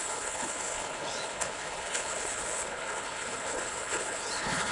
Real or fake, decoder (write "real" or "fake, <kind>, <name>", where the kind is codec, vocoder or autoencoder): fake, codec, HILCodec